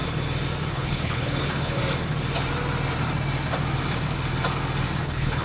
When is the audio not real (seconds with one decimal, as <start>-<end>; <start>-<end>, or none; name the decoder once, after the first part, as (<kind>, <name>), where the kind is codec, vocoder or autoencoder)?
0.7-1.8 (codec, HILCodec); 5.0-5.4